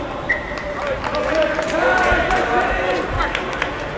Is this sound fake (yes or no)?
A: no